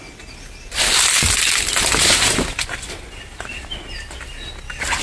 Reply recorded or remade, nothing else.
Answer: recorded